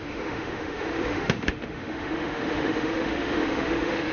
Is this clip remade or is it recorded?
remade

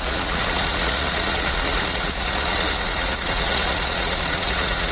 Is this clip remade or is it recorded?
remade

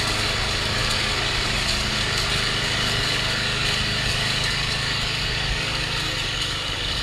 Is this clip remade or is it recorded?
remade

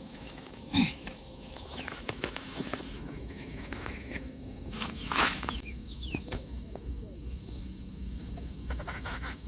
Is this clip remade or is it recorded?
remade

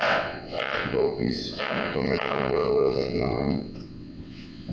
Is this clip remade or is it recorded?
remade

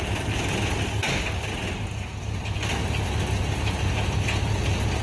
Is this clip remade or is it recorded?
recorded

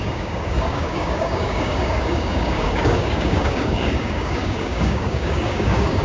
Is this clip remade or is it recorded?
remade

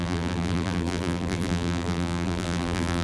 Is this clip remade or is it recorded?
remade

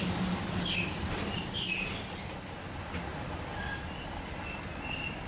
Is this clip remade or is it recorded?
recorded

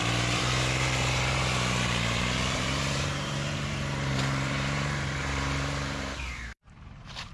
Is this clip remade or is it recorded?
remade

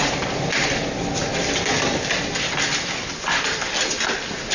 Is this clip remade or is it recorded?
recorded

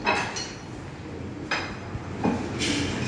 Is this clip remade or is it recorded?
recorded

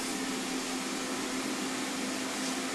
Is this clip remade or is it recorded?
recorded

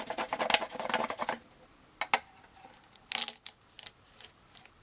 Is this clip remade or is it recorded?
recorded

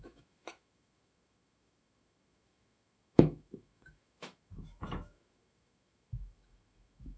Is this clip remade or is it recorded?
remade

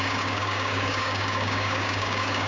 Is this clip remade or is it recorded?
remade